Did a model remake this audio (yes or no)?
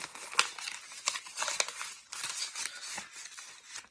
no